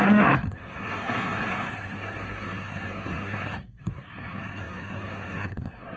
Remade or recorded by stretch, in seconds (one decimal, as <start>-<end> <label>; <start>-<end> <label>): 0.0-6.0 remade